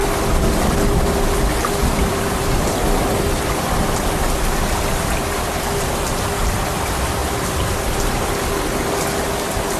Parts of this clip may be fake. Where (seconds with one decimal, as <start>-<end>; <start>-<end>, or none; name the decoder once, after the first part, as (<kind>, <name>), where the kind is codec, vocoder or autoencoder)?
none